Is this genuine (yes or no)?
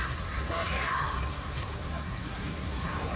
no